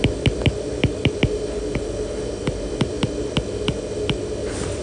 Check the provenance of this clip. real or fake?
real